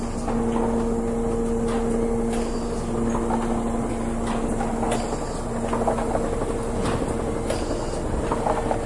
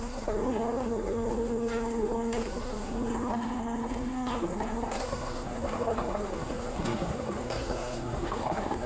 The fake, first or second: second